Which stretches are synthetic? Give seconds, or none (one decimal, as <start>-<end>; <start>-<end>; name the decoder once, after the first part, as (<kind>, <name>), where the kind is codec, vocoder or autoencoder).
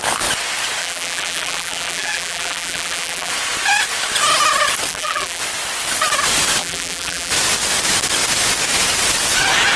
0.8-3.3 (vocoder, BigVGAN v2); 4.9-5.4; 6.6-7.3